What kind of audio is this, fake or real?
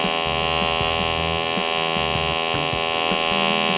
real